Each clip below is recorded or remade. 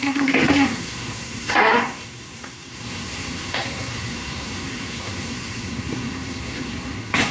remade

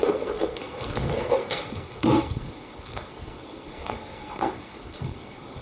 remade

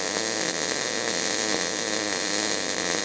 recorded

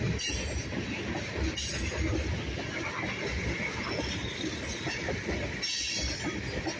recorded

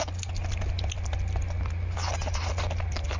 recorded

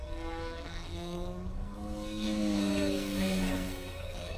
remade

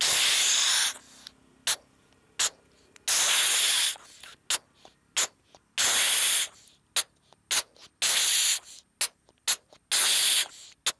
recorded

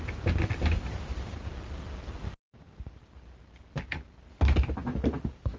recorded